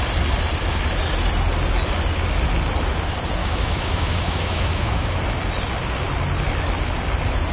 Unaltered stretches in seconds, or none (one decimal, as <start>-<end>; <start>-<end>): 0.0-3.4; 5.2-7.5